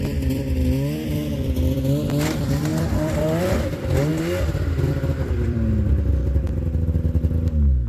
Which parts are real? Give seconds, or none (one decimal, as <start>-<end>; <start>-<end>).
4.1-4.9; 6.1-7.9